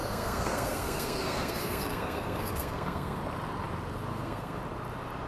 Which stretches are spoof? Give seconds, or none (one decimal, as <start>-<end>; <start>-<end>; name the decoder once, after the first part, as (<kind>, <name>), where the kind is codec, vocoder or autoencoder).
0.0-3.2 (codec, SNAC); 4.1-4.6